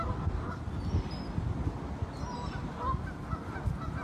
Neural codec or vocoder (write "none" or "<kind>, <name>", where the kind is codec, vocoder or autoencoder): none